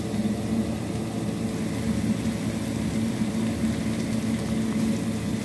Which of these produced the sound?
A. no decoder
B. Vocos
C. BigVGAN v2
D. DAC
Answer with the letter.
A